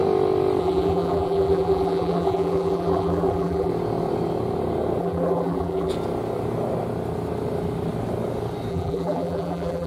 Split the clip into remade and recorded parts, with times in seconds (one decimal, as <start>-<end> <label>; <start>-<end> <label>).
0.0-0.6 recorded; 0.6-3.7 remade; 3.7-5.0 recorded; 5.0-5.9 remade; 5.9-8.7 recorded; 8.7-9.9 remade